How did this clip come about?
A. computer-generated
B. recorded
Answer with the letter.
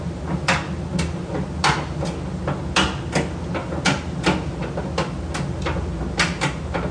B